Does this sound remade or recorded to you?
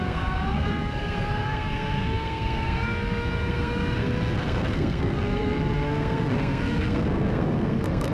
remade